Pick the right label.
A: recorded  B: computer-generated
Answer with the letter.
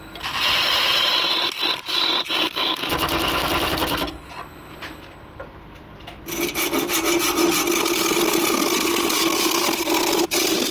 A